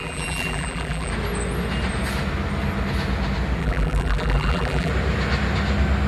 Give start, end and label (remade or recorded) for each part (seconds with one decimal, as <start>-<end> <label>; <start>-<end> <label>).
0.0-1.1 remade; 1.1-3.6 recorded; 3.6-4.9 remade; 4.9-6.1 recorded